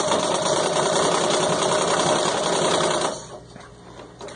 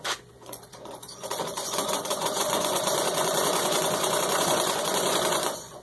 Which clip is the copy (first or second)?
second